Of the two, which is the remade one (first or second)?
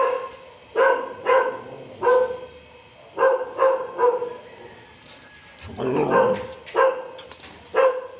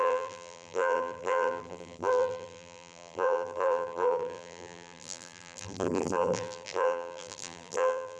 second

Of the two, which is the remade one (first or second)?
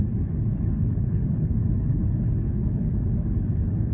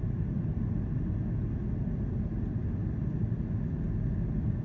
first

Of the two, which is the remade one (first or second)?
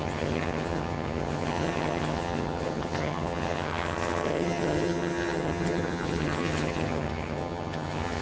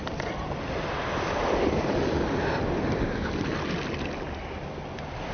first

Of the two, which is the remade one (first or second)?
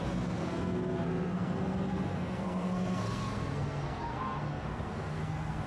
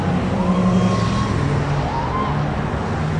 first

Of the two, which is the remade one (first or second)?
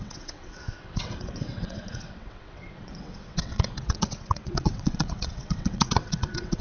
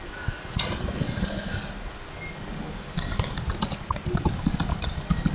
first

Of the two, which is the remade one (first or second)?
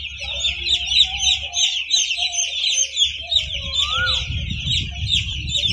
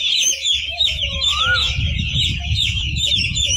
second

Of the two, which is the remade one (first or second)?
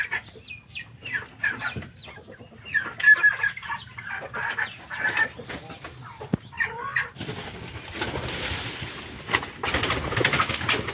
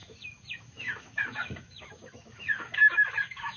second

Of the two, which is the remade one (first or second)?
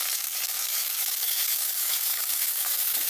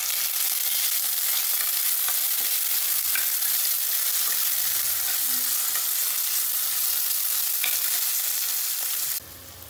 first